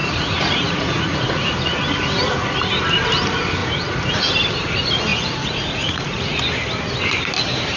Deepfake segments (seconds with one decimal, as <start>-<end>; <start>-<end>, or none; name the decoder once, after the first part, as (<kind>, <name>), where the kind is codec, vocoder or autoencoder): 0.0-1.5 (vocoder, Vocos); 3.6-4.3; 5.1-6.4